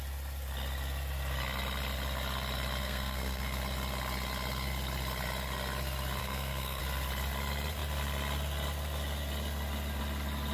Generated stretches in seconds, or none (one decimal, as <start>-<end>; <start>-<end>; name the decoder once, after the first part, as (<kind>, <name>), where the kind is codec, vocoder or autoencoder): 2.8-3.4 (codec, SNAC); 6.2-6.8